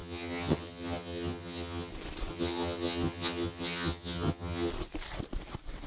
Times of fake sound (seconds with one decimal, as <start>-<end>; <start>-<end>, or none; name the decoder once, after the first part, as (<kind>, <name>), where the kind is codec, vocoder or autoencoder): 0.0-1.9 (vocoder, HiFi-GAN); 2.3-4.7